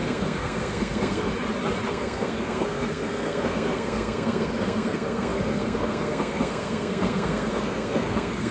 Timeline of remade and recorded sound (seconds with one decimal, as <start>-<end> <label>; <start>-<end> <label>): 0.0-1.3 remade; 1.3-1.9 recorded; 1.9-8.5 remade

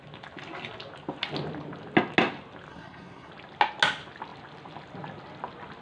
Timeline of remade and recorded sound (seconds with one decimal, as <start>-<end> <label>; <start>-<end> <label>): 0.0-2.7 recorded; 2.7-3.3 remade; 3.3-5.8 recorded

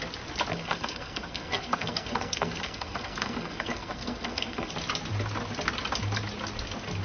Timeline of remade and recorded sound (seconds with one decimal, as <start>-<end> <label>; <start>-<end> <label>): 0.0-0.5 recorded; 0.5-4.7 remade; 4.7-7.0 recorded

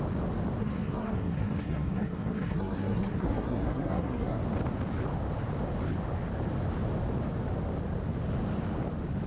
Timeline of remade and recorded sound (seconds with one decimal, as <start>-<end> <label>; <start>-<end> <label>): 0.0-0.6 recorded; 0.6-4.4 remade; 4.4-9.3 recorded

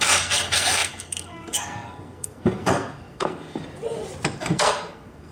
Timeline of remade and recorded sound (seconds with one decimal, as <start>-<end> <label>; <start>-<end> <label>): 0.0-3.6 remade; 3.6-4.4 recorded; 4.4-5.3 remade